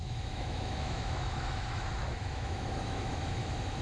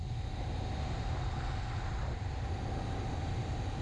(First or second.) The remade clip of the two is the first